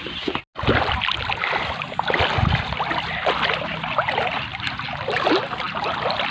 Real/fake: real